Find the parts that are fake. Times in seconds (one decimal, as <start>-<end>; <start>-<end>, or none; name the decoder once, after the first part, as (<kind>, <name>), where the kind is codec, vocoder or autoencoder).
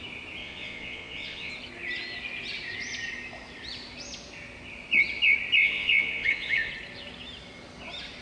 0.4-1.5 (vocoder, Vocos); 5.6-6.7